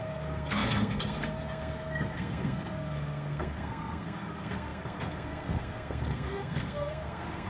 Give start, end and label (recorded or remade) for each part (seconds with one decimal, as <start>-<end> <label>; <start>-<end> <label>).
0.0-7.5 remade